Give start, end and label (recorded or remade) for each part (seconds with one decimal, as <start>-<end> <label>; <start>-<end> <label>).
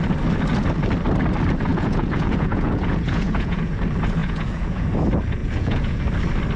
0.0-1.7 recorded; 1.7-3.8 remade; 3.8-4.2 recorded; 4.2-4.9 remade; 4.9-5.4 recorded; 5.4-6.0 remade; 6.0-6.6 recorded